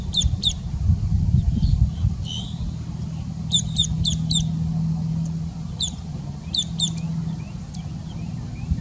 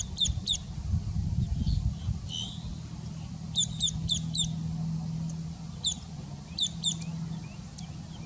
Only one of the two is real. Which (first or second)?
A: second